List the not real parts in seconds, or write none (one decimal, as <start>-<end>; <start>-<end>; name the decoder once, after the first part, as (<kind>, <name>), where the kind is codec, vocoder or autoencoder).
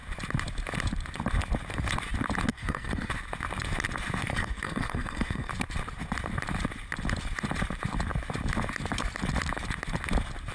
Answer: 2.5-3.1 (codec, SNAC); 4.3-5.5